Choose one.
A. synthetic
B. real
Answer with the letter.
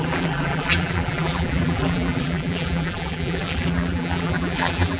A